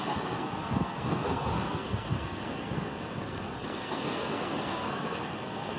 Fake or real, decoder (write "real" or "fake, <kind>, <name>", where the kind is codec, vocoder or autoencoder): fake, codec, SNAC